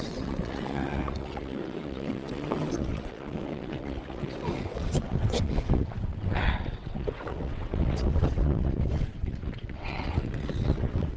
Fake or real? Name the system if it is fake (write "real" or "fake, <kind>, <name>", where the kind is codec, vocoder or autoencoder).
fake, vocoder, WaveNeXt